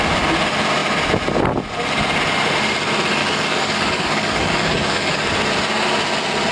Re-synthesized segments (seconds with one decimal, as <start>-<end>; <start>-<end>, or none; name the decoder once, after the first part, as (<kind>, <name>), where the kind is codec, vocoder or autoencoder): 3.2-5.3 (codec, DAC)